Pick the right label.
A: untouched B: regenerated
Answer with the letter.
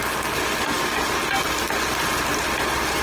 A